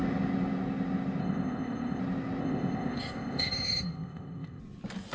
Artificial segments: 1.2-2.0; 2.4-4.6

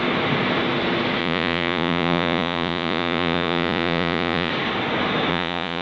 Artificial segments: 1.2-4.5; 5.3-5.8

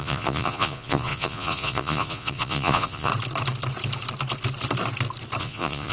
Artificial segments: 0.0-3.1; 5.4-5.9

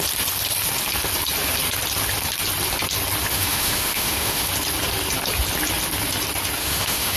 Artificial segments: 3.3-4.5; 6.6-7.2